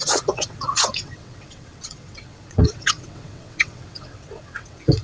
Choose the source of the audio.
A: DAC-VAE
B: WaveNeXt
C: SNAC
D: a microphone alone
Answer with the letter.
B